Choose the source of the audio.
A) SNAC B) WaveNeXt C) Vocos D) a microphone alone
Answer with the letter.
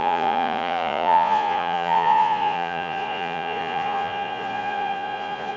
C